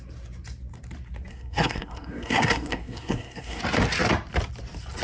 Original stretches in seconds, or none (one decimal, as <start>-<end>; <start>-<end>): 0.0-1.3; 3.6-5.0